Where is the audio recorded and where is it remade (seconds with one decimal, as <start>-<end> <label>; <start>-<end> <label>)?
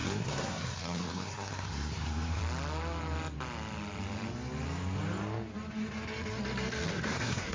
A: 0.0-2.4 remade; 2.4-6.9 recorded; 6.9-7.5 remade